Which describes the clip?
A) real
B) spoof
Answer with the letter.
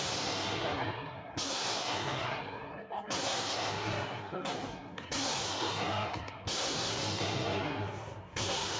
B